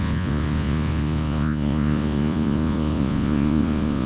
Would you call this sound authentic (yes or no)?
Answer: no